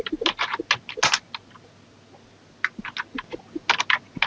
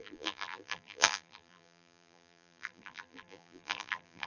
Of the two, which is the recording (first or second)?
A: first